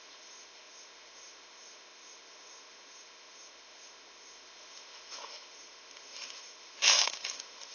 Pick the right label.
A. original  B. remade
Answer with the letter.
B